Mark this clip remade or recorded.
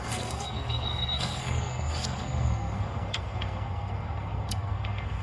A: remade